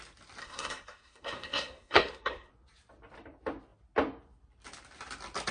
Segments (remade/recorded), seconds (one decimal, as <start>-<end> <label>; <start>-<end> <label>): 0.0-0.4 recorded; 0.4-2.5 remade; 2.5-5.5 recorded